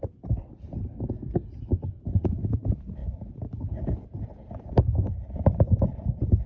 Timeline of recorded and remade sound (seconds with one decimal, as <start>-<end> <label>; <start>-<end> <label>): 0.0-6.5 recorded